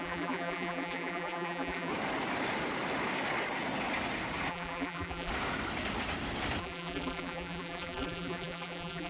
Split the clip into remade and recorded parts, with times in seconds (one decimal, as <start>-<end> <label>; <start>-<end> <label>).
0.0-1.9 remade; 1.9-4.5 recorded; 4.5-5.3 remade; 5.3-6.6 recorded; 6.6-9.1 remade